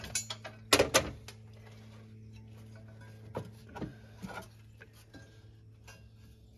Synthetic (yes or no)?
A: no